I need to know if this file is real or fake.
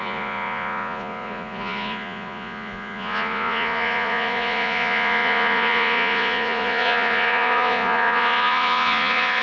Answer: fake